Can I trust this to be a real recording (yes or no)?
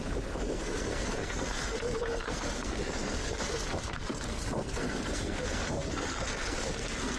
no